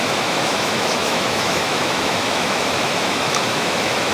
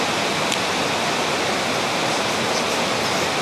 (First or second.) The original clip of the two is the second